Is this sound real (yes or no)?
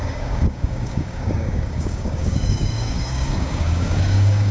no